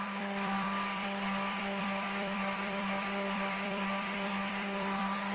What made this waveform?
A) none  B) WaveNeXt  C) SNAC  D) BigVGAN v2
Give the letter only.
D